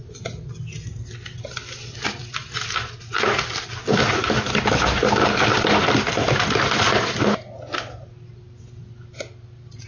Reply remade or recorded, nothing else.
recorded